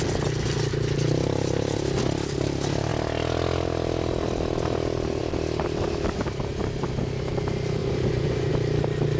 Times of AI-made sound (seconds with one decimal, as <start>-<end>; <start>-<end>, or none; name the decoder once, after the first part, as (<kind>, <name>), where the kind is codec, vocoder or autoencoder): 7.8-8.5 (vocoder, Vocos)